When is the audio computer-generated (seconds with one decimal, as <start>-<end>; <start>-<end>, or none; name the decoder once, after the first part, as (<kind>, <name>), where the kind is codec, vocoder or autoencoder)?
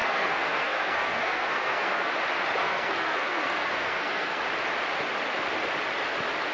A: 0.0-2.1 (codec, SNAC); 2.6-4.4